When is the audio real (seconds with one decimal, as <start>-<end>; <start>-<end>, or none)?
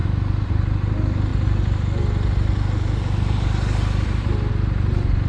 0.0-5.3